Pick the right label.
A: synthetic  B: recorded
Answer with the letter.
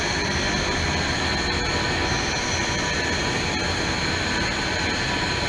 B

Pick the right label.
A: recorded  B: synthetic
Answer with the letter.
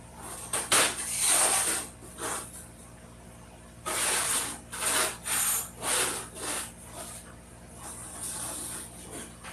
A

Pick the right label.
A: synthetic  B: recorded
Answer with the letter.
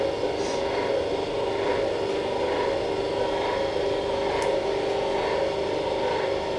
B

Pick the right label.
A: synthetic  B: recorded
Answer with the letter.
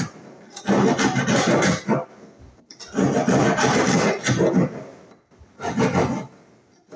B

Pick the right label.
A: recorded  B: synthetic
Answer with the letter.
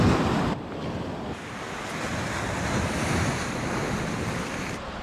A